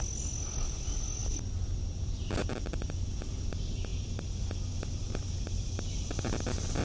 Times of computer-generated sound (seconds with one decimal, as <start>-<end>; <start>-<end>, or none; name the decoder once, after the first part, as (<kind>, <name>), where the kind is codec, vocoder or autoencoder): 1.2-3.5 (vocoder, BigVGAN v2)